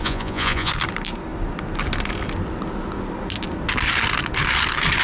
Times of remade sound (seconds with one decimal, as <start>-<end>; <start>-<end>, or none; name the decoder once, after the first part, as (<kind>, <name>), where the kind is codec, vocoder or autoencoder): 0.0-0.7 (vocoder, Vocos)